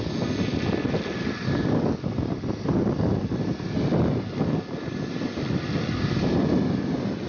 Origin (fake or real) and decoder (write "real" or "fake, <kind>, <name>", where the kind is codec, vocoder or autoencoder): real